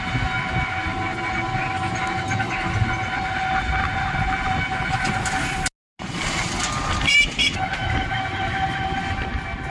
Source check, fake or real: real